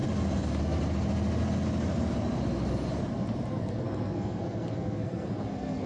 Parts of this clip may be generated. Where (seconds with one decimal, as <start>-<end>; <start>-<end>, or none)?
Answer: 3.5-5.9